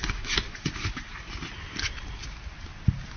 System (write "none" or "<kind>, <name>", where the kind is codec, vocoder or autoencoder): none